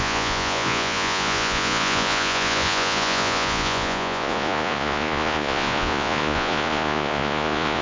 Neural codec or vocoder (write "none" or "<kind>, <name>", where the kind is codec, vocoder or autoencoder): vocoder, Vocos